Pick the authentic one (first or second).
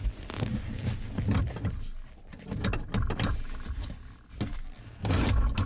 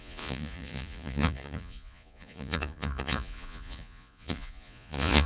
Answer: first